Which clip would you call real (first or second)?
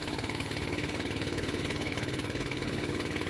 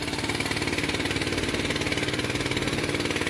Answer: second